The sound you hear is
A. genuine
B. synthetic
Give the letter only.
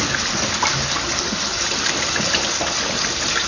A